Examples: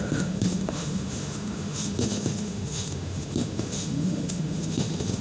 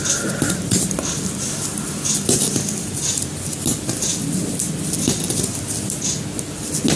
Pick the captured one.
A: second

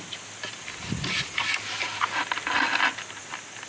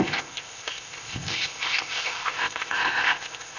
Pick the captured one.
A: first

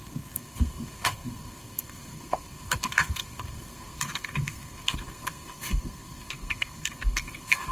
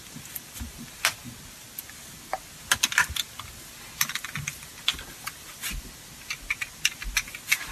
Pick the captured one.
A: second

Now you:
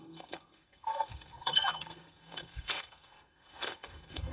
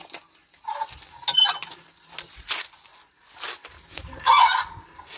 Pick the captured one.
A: second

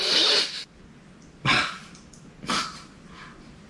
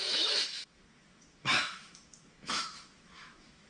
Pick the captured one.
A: first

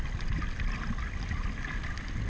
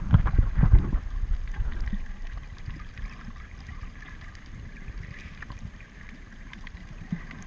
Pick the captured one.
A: first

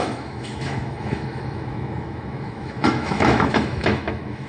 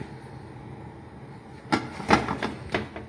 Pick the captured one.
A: second